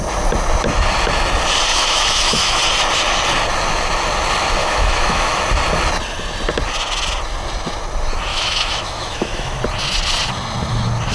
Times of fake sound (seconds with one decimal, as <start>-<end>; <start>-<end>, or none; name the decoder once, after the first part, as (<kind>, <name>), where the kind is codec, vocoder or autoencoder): 1.7-2.6 (autoencoder, DAC-VAE); 4.6-5.4; 8.3-9.6